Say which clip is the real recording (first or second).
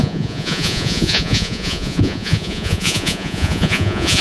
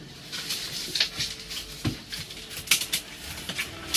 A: second